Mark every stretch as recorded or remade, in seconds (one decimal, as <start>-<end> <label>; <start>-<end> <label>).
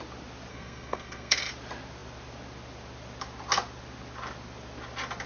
0.0-0.5 recorded; 0.5-1.5 remade; 1.5-5.3 recorded